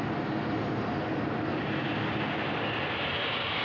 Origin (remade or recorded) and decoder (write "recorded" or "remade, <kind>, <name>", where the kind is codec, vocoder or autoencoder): recorded